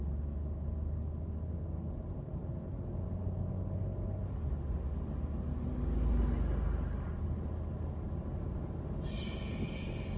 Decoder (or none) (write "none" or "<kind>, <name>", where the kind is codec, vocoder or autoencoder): none